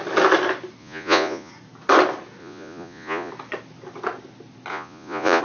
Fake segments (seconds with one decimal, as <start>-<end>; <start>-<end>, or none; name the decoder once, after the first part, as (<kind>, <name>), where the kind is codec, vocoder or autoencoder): 0.8-1.5 (vocoder, Vocos); 2.4-3.3; 4.7-5.4